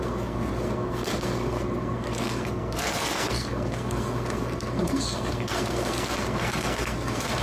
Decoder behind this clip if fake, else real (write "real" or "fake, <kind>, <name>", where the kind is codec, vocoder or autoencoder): fake, codec, SNAC